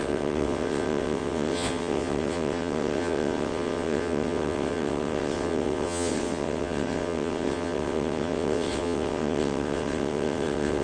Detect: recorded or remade remade